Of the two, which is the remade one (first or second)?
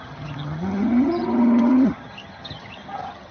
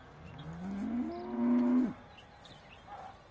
first